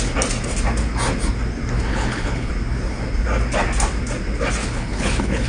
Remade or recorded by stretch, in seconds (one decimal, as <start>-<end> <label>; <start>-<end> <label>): 0.0-1.9 recorded; 1.9-2.5 remade; 2.5-4.6 recorded; 4.6-5.5 remade